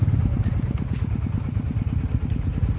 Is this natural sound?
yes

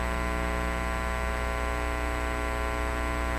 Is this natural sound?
yes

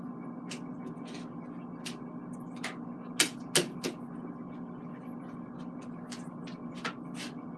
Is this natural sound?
yes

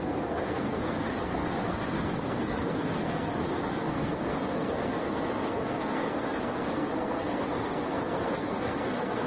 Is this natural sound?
no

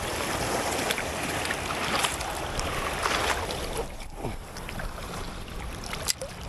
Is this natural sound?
yes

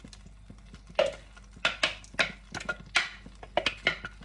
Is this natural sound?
yes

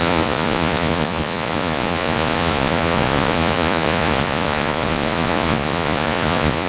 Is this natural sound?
no